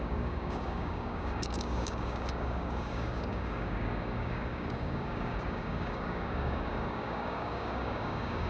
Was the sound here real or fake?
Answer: fake